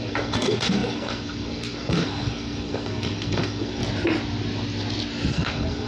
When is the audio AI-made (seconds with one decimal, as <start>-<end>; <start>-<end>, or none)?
0.0-3.8; 5.3-5.9

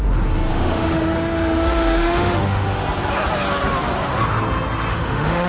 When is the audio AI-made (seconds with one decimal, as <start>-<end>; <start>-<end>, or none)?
0.5-2.8; 4.9-5.5

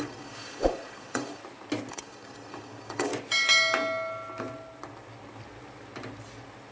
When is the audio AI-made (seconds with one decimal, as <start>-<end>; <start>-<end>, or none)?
0.0-1.4; 1.9-3.1

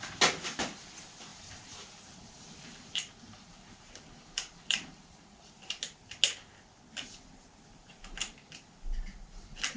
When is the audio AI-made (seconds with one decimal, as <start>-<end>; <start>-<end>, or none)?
1.3-5.5

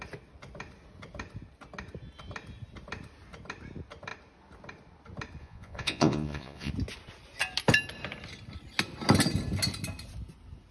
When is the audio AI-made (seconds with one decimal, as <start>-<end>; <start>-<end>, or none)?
5.4-6.7